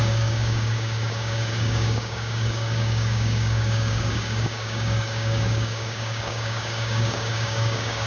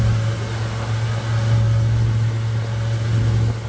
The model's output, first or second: first